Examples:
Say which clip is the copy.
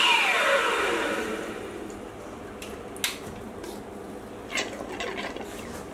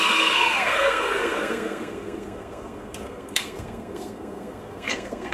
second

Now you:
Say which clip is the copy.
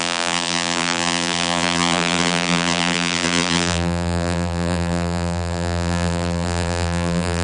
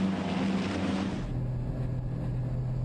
first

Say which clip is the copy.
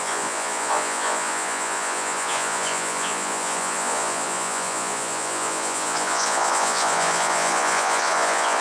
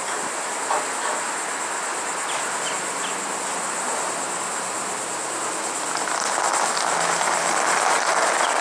first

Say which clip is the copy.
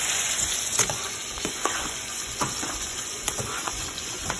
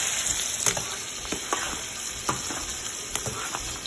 first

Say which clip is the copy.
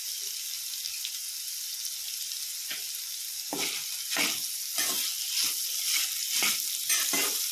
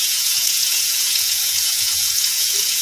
second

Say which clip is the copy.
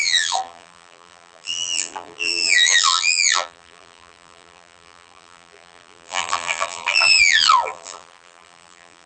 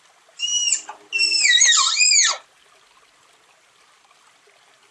first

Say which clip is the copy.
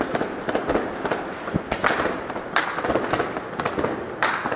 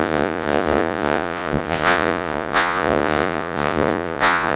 second